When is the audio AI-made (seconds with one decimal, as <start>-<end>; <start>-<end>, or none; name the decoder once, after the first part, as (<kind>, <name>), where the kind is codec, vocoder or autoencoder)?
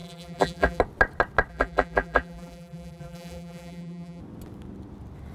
0.0-0.8 (vocoder, BigVGAN v2); 1.5-4.2